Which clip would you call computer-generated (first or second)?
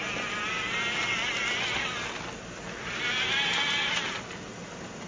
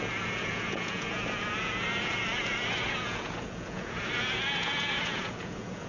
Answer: second